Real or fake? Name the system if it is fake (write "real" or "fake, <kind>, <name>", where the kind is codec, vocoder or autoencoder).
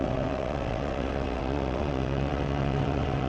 fake, vocoder, WaveNeXt